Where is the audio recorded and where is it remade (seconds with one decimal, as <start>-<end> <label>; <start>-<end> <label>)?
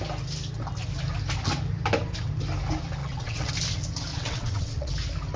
0.0-3.0 recorded; 3.0-3.5 remade; 3.5-4.1 recorded; 4.1-4.9 remade; 4.9-5.4 recorded